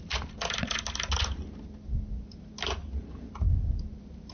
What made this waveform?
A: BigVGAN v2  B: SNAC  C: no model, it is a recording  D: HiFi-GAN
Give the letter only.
C